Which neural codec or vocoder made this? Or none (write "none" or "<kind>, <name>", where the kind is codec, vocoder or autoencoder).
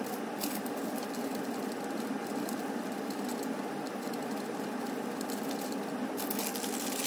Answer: none